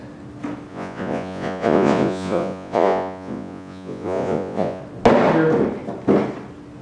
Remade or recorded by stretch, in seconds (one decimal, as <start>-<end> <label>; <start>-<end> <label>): 0.0-0.7 recorded; 0.7-4.8 remade; 4.8-6.8 recorded